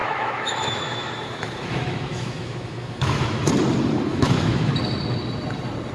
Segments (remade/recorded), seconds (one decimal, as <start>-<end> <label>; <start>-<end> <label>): 0.0-3.5 remade; 3.5-4.1 recorded; 4.1-4.7 remade; 4.7-5.9 recorded